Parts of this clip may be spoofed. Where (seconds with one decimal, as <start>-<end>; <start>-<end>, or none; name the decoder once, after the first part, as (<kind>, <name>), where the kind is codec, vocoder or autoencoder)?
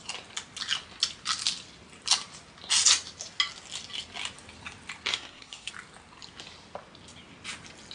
5.1-5.7 (codec, SNAC)